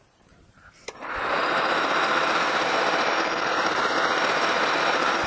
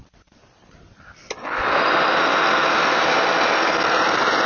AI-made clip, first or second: first